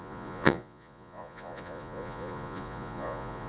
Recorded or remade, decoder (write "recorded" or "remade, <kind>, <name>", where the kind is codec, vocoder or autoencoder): remade, vocoder, Vocos